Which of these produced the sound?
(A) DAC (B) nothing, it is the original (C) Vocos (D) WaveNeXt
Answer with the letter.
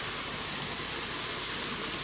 B